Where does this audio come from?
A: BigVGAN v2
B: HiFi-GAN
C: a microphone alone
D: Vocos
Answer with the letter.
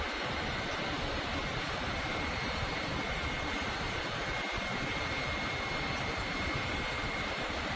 A